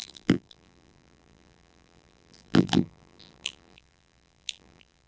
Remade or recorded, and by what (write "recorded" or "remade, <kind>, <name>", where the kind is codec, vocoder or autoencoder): remade, vocoder, BigVGAN v2